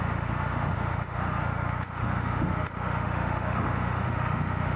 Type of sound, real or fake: fake